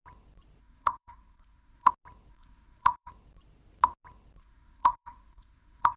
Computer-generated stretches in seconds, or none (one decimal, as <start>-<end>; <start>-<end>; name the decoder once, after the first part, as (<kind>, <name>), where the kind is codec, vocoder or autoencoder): 0.6-1.9 (codec, SNAC); 2.3-3.1; 4.4-6.0